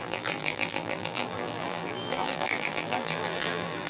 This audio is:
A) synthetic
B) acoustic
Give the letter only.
A